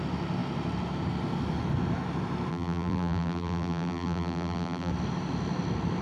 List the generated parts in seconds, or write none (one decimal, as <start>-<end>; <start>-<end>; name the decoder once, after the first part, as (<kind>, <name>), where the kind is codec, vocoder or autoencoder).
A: 2.5-4.9 (vocoder, BigVGAN v2)